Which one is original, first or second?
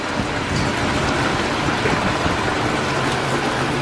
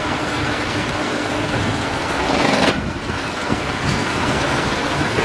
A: first